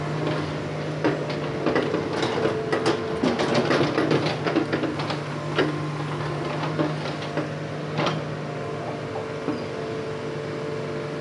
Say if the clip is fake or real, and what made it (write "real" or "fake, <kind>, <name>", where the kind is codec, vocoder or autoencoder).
real